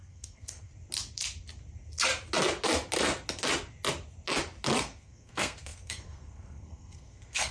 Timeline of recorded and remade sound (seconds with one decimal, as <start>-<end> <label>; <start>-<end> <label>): 0.0-0.7 remade; 0.7-4.8 recorded; 4.8-7.5 remade